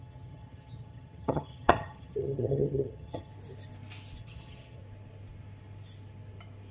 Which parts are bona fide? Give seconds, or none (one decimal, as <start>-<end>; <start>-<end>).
3.3-4.2; 4.8-6.7